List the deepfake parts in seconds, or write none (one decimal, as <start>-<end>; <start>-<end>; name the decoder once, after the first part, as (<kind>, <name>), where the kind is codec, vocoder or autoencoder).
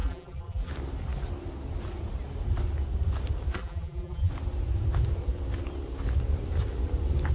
0.0-0.7 (vocoder, BigVGAN v2); 3.6-4.3